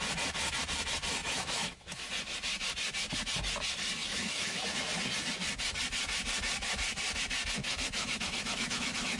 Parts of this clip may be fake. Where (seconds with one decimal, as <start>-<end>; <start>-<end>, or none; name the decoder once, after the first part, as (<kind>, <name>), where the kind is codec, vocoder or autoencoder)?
1.2-2.1 (autoencoder, DAC-VAE); 4.0-4.6; 7.6-9.2